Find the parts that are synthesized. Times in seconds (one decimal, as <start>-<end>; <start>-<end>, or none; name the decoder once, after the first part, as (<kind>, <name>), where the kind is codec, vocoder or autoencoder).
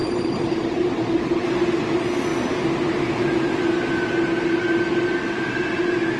none